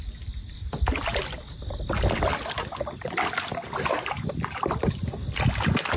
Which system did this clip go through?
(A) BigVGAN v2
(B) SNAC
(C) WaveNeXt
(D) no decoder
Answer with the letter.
D